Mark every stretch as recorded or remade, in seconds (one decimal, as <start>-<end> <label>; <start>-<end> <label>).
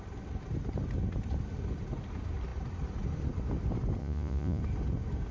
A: 0.0-4.0 recorded; 4.0-4.6 remade; 4.6-5.3 recorded